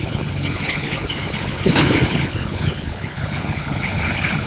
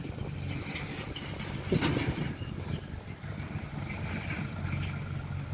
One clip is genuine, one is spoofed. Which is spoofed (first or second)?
first